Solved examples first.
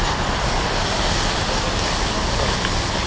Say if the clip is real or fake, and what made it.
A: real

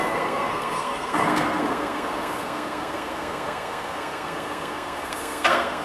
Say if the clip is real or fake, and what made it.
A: fake, codec, SNAC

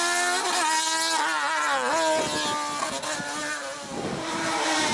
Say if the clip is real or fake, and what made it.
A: real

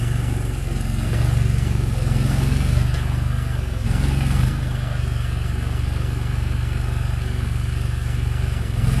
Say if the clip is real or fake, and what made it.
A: fake, codec, SNAC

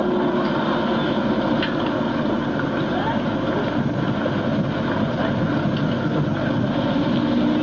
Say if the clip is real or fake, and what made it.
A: real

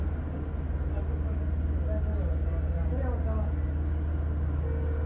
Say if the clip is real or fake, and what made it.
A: real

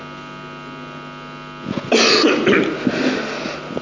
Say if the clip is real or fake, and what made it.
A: real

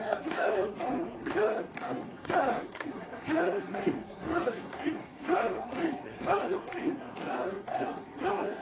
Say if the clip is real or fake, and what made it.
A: fake, codec, SNAC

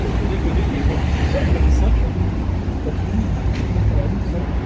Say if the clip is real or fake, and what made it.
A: real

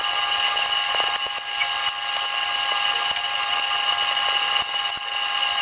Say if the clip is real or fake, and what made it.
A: real